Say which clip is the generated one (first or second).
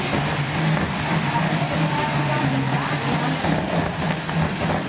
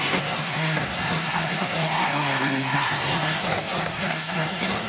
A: second